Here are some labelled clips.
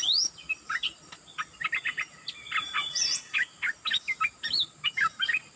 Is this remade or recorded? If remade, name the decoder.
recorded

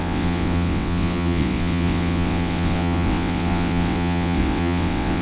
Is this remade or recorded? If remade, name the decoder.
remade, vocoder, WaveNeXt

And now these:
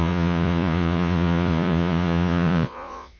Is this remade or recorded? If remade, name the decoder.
remade, vocoder, Vocos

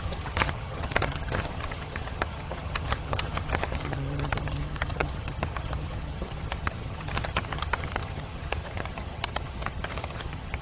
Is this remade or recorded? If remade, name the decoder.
remade, vocoder, HiFi-GAN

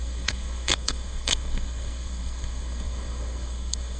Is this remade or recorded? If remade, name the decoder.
remade, codec, SNAC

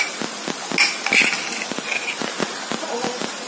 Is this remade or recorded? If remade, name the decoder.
recorded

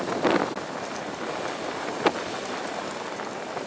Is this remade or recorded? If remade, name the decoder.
recorded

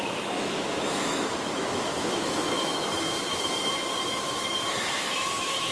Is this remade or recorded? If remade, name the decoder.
remade, autoencoder, DAC-VAE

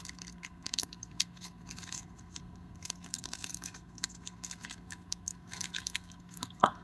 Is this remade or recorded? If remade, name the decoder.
remade, codec, SNAC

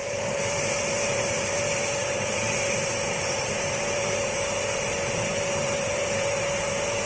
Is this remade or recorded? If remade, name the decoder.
remade, vocoder, BigVGAN v2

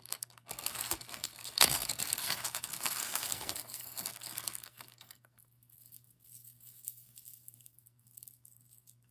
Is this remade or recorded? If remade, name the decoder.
remade, codec, SNAC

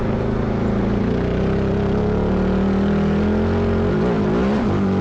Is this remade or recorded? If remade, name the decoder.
recorded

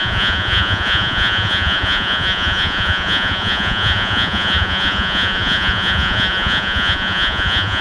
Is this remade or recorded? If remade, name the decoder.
remade, vocoder, Vocos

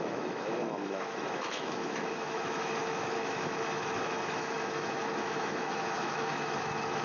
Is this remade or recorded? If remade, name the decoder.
remade, autoencoder, DAC-VAE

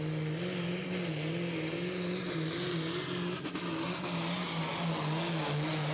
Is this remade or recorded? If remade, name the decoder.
recorded